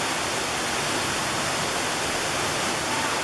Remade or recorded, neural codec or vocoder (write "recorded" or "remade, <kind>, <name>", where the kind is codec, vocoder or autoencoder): recorded